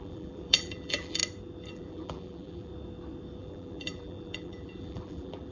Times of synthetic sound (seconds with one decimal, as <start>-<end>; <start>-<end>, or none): 0.0-1.2; 1.7-2.7; 3.4-5.5